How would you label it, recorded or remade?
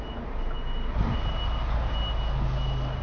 recorded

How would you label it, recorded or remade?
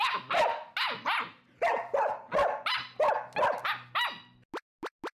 recorded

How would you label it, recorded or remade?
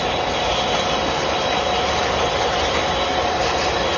remade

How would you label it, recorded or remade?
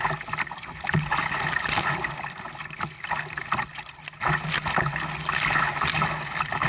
recorded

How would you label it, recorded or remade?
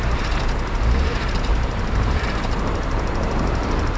remade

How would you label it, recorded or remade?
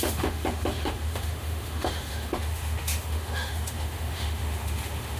remade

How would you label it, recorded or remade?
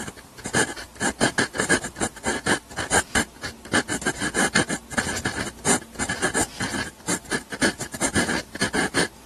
recorded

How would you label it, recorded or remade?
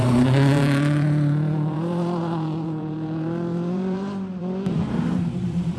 remade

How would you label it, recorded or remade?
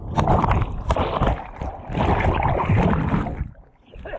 remade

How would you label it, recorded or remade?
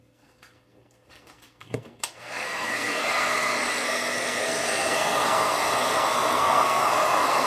remade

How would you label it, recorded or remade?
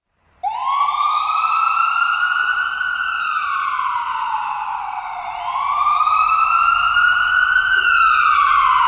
recorded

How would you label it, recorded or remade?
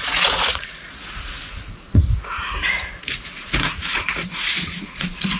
remade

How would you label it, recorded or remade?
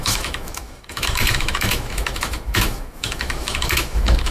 remade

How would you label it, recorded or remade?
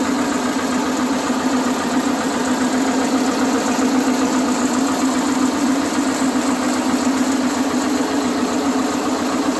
recorded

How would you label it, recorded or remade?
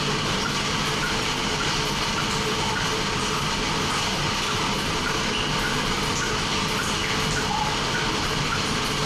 recorded